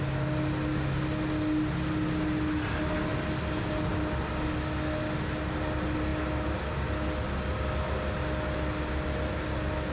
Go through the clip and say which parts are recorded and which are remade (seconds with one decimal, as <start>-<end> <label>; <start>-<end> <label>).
0.0-9.9 recorded